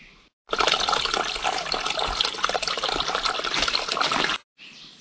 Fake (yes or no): no